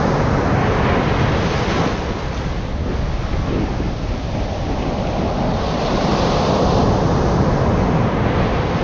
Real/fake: real